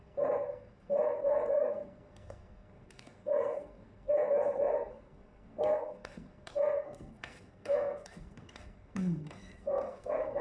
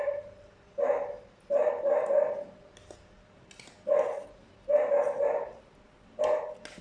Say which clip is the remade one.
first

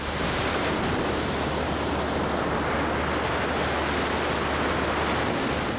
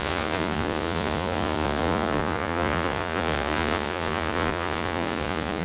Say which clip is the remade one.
second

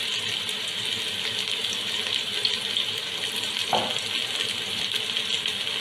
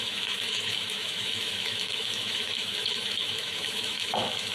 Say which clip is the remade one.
second